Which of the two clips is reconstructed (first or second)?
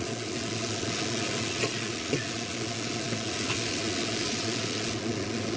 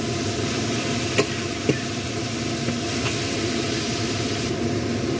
first